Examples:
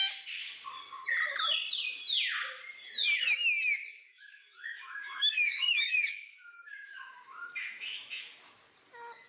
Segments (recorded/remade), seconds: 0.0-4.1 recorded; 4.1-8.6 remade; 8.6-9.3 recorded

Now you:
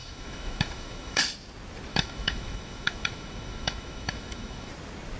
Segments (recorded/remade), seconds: 0.0-1.2 remade; 1.2-1.9 recorded; 1.9-4.7 remade; 4.7-5.2 recorded

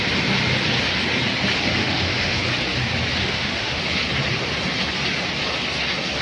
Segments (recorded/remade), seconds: 0.0-1.8 recorded; 1.8-2.4 remade; 2.4-3.2 recorded; 3.2-3.8 remade; 3.8-6.2 recorded

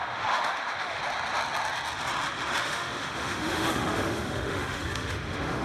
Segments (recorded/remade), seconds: 0.0-1.0 remade; 1.0-2.6 recorded; 2.6-5.6 remade

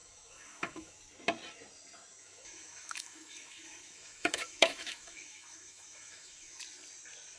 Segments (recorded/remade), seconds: 0.0-1.0 remade; 1.0-2.2 recorded; 2.2-6.6 remade; 6.6-7.4 recorded